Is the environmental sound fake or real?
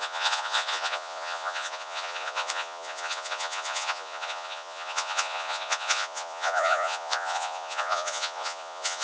fake